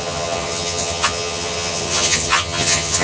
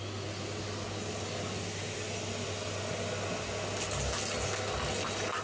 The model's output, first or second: first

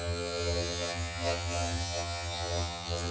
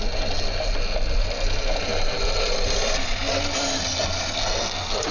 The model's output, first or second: first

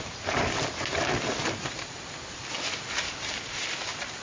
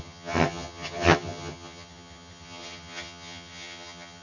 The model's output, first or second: second